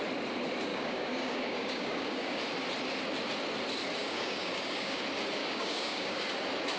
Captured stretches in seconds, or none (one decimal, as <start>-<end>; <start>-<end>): 0.0-0.7; 2.4-4.0; 5.0-5.4; 6.2-6.8